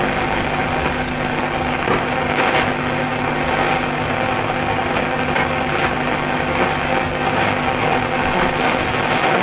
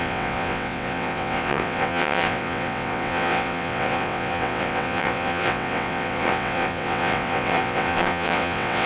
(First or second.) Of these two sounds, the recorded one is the first